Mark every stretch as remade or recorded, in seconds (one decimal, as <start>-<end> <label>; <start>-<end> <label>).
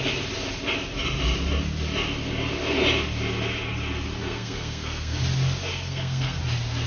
0.0-4.2 recorded; 4.2-5.2 remade; 5.2-5.7 recorded; 5.7-6.4 remade; 6.4-6.9 recorded